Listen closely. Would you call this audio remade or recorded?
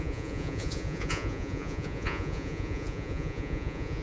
remade